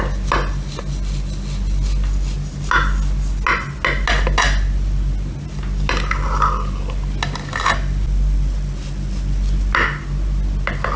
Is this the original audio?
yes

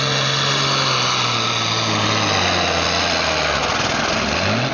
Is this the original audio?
yes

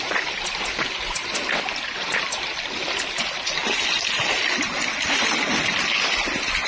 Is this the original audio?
yes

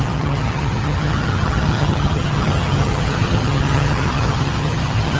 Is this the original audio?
no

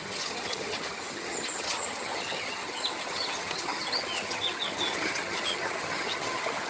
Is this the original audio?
no